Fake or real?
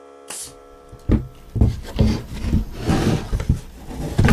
real